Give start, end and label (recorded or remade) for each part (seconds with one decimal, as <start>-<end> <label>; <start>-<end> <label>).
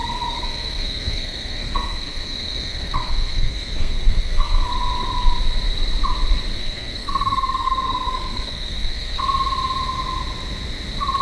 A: 0.0-4.7 remade; 4.7-6.5 recorded; 6.5-9.2 remade; 9.2-11.2 recorded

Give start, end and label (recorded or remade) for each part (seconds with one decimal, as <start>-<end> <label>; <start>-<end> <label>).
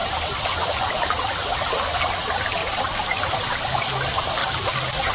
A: 0.0-4.4 recorded; 4.4-5.1 remade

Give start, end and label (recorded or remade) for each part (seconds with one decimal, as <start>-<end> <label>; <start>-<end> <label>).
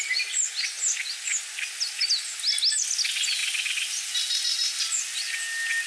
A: 0.0-5.9 recorded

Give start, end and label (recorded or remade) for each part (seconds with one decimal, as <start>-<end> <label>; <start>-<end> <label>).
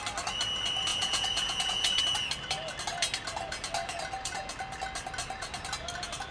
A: 0.0-0.9 recorded; 0.9-2.0 remade; 2.0-6.3 recorded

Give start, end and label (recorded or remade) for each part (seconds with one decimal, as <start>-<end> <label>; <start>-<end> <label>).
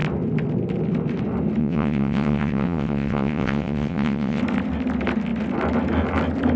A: 0.0-1.6 recorded; 1.6-4.4 remade; 4.4-6.6 recorded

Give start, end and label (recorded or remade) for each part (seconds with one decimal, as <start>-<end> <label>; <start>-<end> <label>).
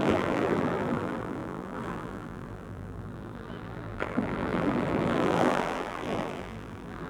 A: 0.0-7.1 remade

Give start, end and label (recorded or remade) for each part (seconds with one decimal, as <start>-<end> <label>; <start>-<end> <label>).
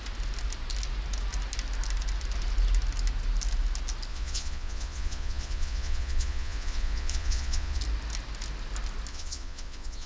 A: 0.0-4.1 recorded; 4.1-7.8 remade; 7.8-9.1 recorded; 9.1-10.1 remade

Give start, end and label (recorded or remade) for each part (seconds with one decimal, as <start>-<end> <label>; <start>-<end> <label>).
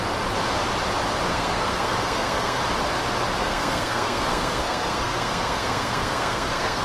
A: 0.0-1.3 recorded; 1.3-2.6 remade; 2.6-3.4 recorded; 3.4-6.8 remade